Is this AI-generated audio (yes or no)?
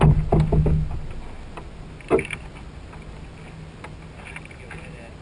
no